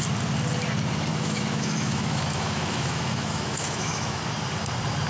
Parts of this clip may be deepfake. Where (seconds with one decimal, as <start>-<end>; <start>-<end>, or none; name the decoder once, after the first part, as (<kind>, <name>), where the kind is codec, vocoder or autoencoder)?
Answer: 1.1-4.2 (autoencoder, DAC-VAE)